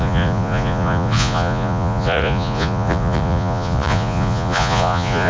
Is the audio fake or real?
fake